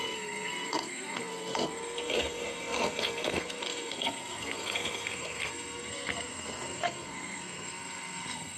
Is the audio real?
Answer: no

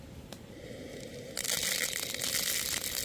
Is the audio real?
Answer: yes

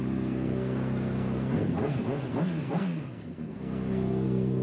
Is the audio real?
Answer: no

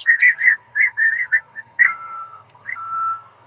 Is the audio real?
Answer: no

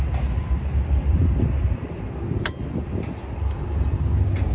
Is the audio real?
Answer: yes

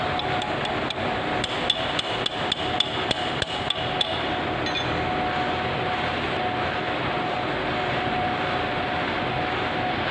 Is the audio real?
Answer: yes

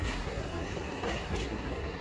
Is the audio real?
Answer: no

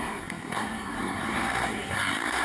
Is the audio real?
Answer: no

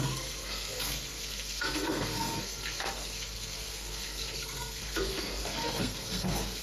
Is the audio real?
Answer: no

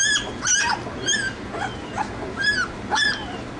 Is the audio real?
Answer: yes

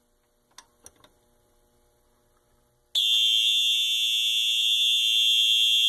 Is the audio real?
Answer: yes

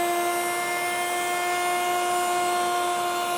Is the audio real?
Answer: yes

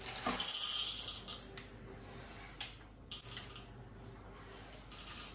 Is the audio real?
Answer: yes